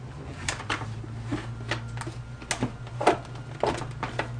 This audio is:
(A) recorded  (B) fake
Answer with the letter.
A